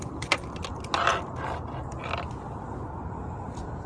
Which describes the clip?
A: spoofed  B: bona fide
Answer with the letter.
A